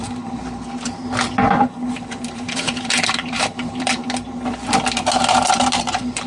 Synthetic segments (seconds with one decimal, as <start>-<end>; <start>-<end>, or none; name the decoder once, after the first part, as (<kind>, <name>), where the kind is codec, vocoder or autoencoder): 0.0-0.4 (vocoder, BigVGAN v2); 1.6-4.0; 5.8-6.3